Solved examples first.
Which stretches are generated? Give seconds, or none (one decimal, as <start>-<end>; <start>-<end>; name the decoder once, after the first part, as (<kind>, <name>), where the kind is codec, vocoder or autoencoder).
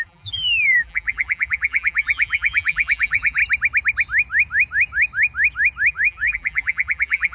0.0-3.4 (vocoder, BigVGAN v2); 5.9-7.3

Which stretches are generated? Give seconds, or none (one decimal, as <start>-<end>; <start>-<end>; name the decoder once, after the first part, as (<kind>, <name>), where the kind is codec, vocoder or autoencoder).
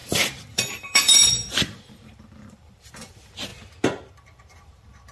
0.0-3.5 (vocoder, BigVGAN v2); 4.1-5.1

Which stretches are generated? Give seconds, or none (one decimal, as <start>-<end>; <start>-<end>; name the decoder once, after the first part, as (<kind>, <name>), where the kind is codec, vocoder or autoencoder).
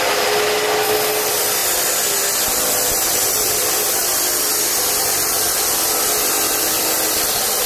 4.0-4.5 (vocoder, BigVGAN v2)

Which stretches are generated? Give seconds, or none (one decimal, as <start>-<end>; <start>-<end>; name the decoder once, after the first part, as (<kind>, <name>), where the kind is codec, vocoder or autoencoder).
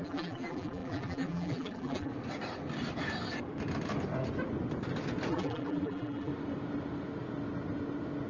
0.0-2.1 (vocoder, BigVGAN v2); 5.3-6.3